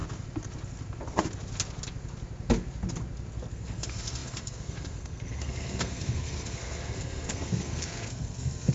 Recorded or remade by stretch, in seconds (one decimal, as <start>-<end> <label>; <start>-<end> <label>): 0.0-3.5 recorded; 3.5-8.7 remade